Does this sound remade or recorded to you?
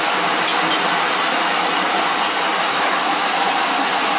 recorded